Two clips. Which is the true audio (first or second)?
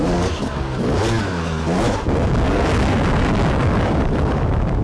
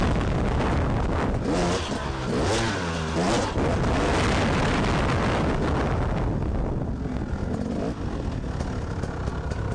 second